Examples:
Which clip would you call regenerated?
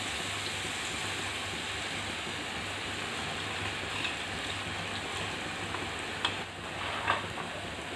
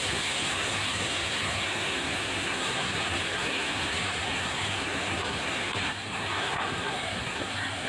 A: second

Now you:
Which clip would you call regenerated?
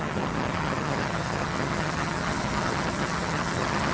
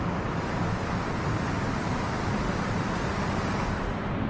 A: first